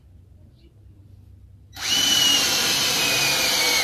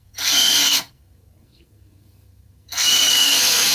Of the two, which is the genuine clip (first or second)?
first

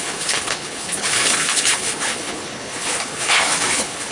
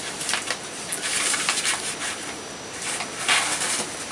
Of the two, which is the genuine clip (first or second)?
second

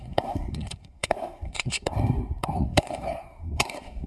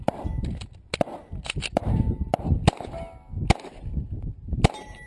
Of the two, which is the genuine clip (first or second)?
second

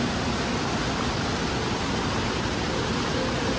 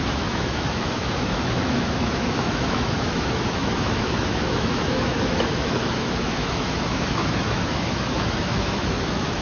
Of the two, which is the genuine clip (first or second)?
first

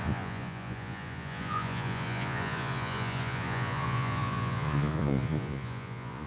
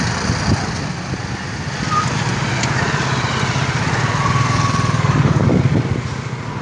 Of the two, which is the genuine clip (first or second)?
second